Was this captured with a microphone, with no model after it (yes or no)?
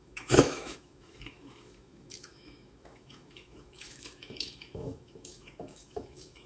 no